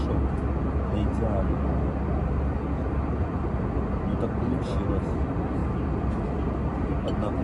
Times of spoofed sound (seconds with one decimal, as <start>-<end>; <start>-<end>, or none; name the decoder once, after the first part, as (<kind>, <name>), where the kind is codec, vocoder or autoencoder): none